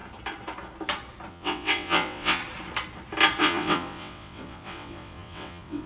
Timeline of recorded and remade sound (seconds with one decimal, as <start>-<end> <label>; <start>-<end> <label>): 0.0-1.3 recorded; 1.3-2.4 remade; 2.4-3.4 recorded; 3.4-5.9 remade